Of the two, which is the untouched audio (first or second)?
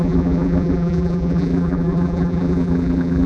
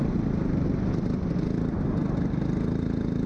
second